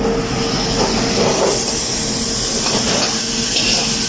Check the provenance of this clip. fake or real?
real